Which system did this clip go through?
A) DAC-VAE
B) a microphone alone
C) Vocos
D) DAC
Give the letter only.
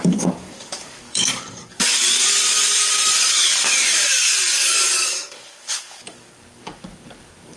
D